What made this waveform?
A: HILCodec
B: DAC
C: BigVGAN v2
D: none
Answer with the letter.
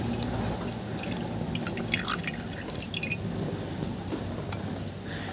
D